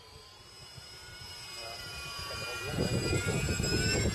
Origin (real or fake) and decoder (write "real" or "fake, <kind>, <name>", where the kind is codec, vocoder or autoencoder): real